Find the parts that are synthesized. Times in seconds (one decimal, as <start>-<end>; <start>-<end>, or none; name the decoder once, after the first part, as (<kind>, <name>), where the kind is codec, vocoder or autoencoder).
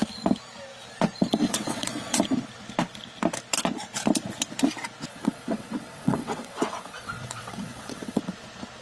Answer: 1.4-2.2 (vocoder, WaveNeXt); 5.1-8.2